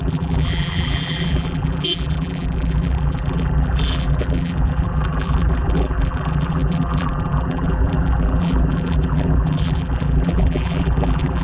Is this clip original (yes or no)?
no